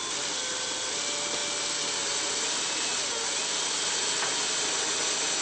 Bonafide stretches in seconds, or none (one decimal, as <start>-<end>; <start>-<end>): 0.0-5.4